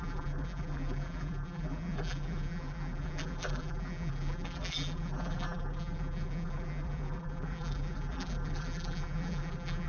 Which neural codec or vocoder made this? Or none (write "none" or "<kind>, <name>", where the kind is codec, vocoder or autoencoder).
vocoder, BigVGAN v2